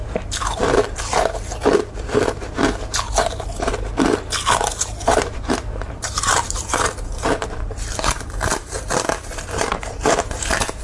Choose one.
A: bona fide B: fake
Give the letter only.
B